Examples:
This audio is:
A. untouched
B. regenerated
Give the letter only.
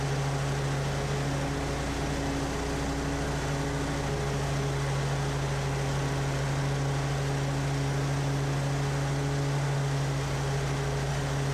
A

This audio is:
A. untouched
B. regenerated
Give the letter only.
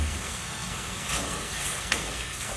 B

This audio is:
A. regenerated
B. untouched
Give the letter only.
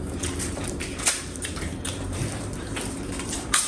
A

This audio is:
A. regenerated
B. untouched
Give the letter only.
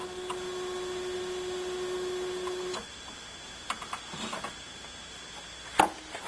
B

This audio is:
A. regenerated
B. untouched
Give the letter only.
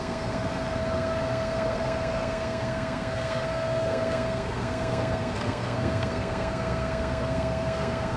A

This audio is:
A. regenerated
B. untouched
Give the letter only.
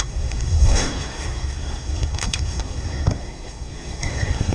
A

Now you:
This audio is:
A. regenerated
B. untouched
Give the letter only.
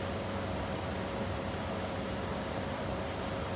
B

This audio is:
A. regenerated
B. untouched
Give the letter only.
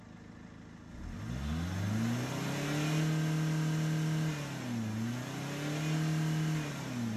B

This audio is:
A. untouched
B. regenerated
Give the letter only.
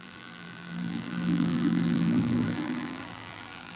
B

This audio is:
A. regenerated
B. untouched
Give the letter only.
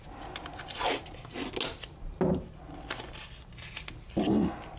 B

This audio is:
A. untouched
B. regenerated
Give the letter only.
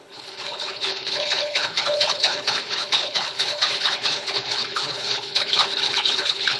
B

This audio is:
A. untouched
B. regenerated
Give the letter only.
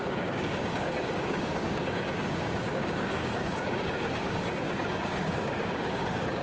B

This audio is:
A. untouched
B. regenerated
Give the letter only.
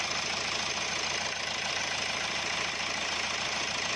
A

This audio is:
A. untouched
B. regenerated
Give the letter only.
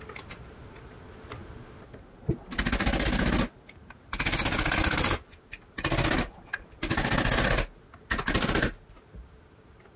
A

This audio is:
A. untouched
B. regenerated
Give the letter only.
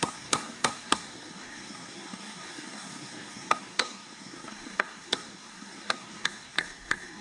B